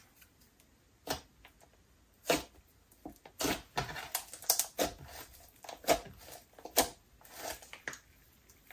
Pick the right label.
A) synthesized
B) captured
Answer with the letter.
B